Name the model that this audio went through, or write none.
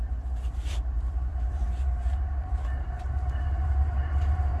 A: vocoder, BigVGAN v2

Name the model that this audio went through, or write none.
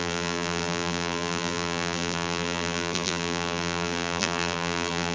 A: vocoder, BigVGAN v2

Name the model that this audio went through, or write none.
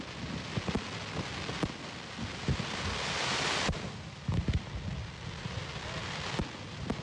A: none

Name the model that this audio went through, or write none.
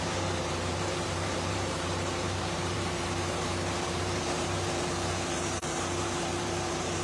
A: vocoder, BigVGAN v2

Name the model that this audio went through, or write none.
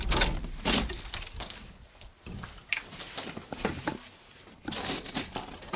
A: vocoder, BigVGAN v2